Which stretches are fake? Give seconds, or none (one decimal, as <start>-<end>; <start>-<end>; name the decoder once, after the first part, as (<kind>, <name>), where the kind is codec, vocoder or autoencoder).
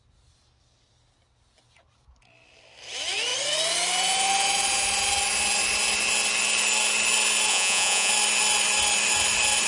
7.5-8.1 (vocoder, Vocos)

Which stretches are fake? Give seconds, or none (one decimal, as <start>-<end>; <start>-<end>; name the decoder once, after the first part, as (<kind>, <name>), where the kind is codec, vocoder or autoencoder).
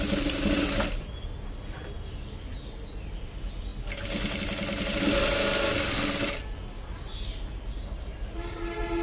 none